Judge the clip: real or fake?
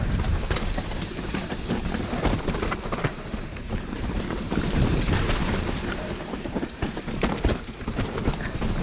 fake